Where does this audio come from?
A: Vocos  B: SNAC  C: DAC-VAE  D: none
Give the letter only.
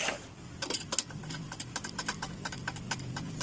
D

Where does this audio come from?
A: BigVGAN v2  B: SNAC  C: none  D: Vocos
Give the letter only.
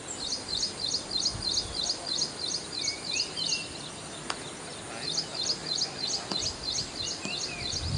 C